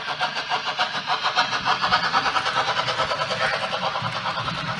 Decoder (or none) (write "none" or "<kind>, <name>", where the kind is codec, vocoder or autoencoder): none